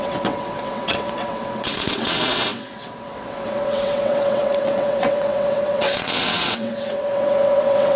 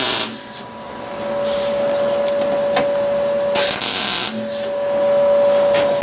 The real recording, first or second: second